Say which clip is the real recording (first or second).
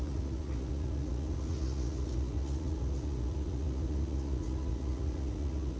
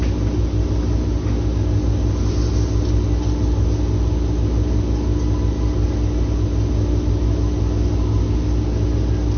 second